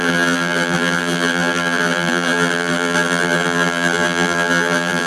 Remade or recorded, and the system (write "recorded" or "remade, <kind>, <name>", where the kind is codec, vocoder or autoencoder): remade, vocoder, BigVGAN v2